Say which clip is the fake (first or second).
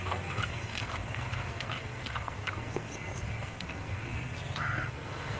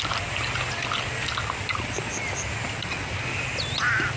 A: first